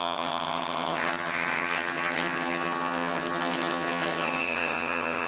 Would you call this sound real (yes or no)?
no